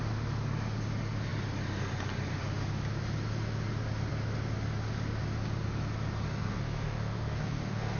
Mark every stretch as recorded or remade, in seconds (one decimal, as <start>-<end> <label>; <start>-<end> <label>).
0.0-6.3 recorded; 6.3-8.0 remade